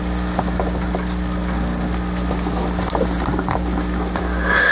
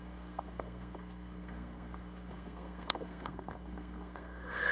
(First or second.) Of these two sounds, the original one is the first